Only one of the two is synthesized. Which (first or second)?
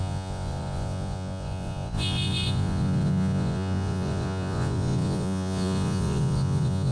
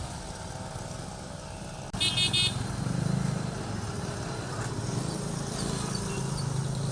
first